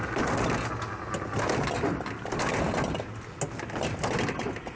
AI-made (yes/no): no